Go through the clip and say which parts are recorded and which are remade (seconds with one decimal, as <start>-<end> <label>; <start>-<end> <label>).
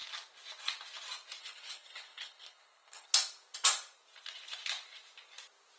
0.0-1.4 recorded; 1.4-3.1 remade; 3.1-5.8 recorded